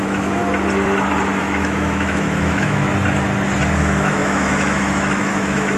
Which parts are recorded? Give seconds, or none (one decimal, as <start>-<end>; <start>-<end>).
0.4-1.4; 2.9-3.8

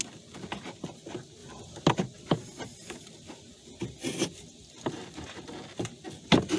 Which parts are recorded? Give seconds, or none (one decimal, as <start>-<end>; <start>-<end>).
0.0-6.6

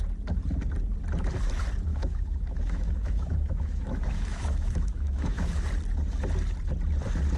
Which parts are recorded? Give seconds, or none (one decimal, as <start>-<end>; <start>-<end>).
0.0-1.9; 5.6-7.4